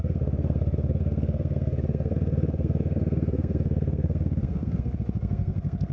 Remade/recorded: remade